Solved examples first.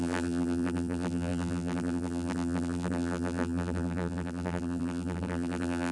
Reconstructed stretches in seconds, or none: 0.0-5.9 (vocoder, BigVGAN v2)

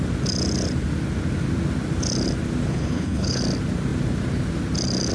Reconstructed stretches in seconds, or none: 2.7-3.4 (codec, HILCodec)